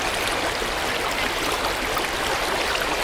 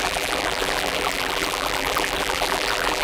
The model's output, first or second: second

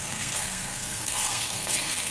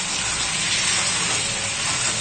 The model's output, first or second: first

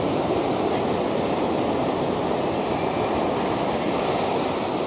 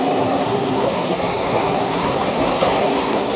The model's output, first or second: second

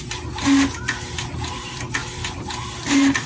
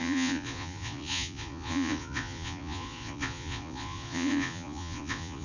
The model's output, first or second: second